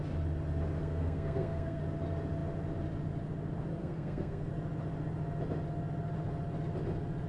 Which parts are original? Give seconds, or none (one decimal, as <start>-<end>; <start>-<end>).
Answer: 0.0-0.8; 1.8-3.8; 4.5-7.3

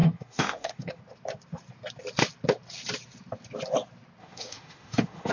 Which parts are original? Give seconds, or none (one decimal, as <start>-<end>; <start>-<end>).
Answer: 1.0-4.2

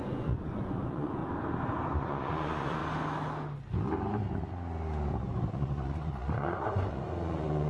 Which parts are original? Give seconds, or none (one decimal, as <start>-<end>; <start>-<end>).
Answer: 1.2-1.9; 2.8-5.5